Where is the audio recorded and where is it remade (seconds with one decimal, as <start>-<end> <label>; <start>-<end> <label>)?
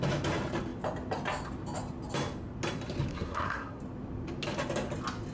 0.0-3.1 recorded; 3.1-3.8 remade; 3.8-5.3 recorded